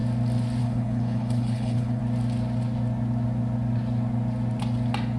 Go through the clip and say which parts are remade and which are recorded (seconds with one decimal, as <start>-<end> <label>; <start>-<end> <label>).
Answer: 0.0-0.6 recorded; 0.6-2.0 remade; 2.0-5.2 recorded